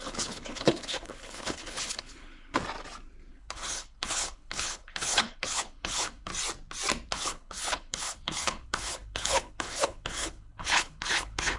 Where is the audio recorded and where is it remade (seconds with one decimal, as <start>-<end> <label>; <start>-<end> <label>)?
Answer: 0.0-2.6 remade; 2.6-3.3 recorded; 3.3-6.3 remade; 6.3-7.1 recorded; 7.1-11.6 remade